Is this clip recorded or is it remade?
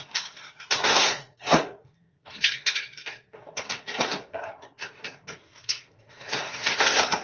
remade